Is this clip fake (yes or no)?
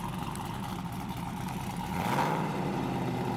yes